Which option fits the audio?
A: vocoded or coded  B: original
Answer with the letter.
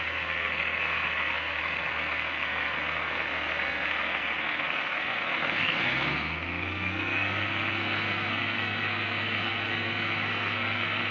A